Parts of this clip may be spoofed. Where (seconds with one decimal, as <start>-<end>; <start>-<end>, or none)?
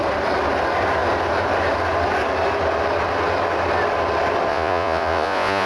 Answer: 4.5-5.7